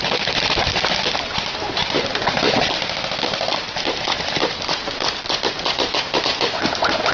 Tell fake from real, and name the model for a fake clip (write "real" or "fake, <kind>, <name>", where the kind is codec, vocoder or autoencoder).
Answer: real